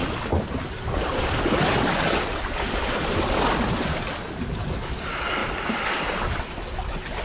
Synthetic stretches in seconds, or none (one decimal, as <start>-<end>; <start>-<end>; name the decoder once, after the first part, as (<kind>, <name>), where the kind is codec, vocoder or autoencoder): 0.0-3.6 (vocoder, BigVGAN v2); 5.4-7.2